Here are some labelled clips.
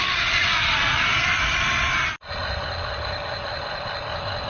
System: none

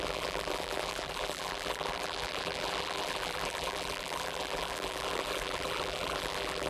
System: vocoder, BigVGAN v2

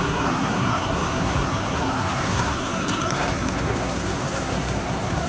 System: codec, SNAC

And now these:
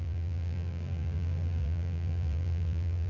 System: vocoder, BigVGAN v2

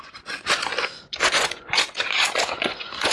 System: vocoder, Vocos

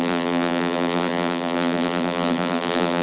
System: vocoder, BigVGAN v2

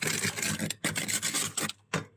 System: none